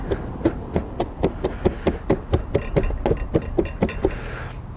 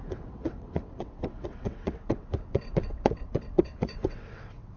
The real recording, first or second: first